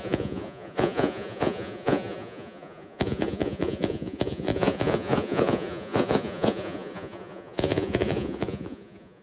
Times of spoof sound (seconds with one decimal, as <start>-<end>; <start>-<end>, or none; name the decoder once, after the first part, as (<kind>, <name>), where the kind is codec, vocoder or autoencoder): 0.0-9.2 (vocoder, Vocos)